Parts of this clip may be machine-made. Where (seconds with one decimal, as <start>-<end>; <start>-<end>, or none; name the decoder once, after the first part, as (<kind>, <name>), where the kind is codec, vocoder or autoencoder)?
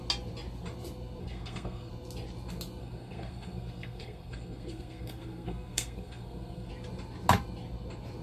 1.2-1.9 (codec, SNAC); 2.8-6.7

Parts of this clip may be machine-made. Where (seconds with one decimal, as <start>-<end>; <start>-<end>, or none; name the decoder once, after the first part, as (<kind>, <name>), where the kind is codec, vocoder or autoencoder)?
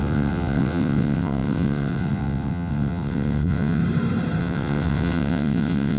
0.0-3.8 (vocoder, WaveNeXt); 4.4-6.0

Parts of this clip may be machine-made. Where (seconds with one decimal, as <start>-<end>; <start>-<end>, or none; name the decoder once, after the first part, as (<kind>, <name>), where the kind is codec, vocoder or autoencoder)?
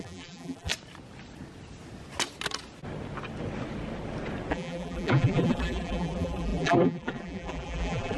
0.0-0.7 (vocoder, BigVGAN v2); 4.5-8.2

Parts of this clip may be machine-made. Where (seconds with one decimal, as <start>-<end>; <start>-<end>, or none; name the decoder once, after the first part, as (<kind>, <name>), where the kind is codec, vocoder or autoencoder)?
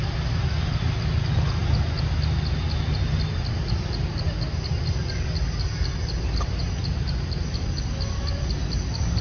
none